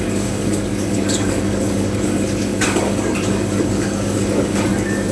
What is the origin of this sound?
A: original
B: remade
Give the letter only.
B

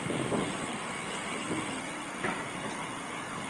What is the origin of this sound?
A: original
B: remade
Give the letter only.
A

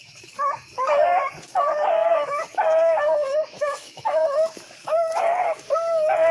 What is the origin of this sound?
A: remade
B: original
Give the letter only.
A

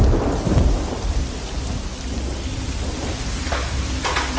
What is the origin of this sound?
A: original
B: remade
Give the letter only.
B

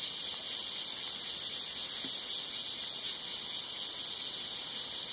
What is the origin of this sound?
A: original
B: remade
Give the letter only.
A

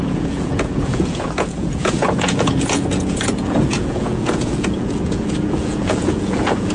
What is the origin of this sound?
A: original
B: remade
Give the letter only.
B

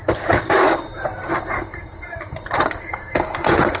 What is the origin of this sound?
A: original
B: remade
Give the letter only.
B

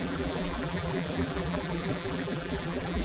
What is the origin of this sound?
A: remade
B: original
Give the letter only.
A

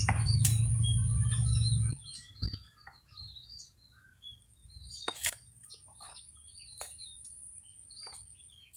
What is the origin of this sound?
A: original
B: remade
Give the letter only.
B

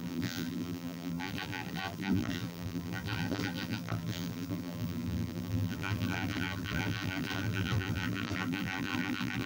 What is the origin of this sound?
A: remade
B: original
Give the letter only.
A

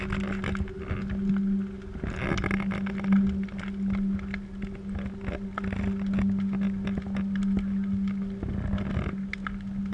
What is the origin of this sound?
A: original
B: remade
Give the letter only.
A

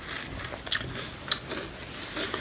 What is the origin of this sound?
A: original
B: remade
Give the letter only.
A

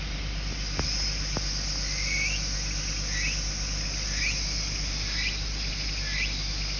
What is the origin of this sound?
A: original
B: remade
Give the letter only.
A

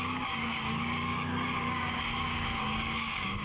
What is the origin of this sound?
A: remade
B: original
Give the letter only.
A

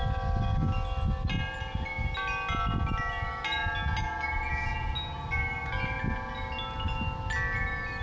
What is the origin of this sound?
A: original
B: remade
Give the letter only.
A